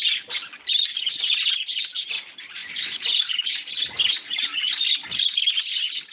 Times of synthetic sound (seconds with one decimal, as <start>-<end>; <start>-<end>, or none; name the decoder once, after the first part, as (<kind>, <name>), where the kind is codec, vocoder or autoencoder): none